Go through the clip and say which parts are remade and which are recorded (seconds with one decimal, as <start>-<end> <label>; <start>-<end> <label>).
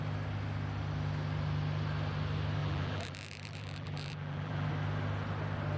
0.0-2.6 recorded; 2.6-4.7 remade; 4.7-5.8 recorded